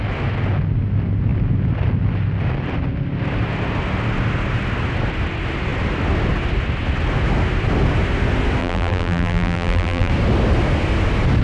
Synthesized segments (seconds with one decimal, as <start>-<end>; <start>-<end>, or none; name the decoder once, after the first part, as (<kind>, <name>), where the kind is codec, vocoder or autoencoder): 8.6-10.1 (vocoder, BigVGAN v2)